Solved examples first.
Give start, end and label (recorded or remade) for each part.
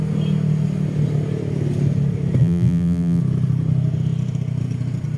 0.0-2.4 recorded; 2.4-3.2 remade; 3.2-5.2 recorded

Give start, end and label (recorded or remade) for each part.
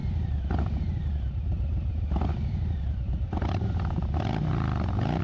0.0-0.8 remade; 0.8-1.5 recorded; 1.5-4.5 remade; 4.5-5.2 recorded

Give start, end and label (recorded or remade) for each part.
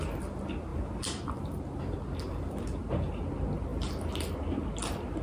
0.0-0.7 recorded; 0.7-1.3 remade; 1.3-5.2 recorded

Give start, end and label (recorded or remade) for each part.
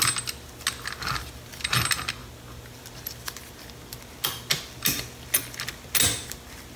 0.0-6.8 recorded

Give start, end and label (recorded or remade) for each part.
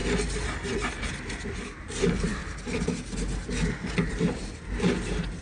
0.0-1.0 recorded; 1.0-2.4 remade; 2.4-4.1 recorded; 4.1-5.4 remade